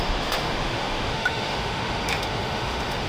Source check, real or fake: fake